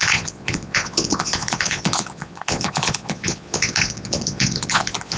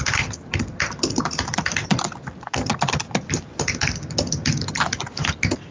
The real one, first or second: second